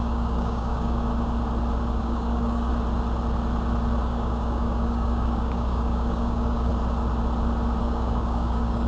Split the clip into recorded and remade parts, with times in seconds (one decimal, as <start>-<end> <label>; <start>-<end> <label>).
0.0-1.1 remade; 1.1-2.0 recorded; 2.0-2.7 remade; 2.7-4.0 recorded; 4.0-6.7 remade; 6.7-7.8 recorded; 7.8-8.9 remade